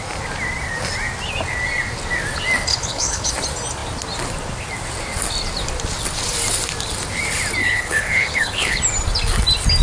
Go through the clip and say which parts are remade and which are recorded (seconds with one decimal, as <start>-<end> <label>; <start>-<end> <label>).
0.0-2.7 recorded; 2.7-3.3 remade; 3.3-7.6 recorded; 7.6-8.8 remade; 8.8-9.8 recorded